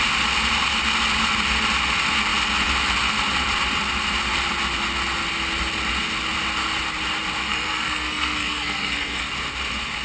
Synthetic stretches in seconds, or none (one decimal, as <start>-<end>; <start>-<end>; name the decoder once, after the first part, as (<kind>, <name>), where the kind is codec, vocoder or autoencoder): 7.4-9.3 (codec, SNAC)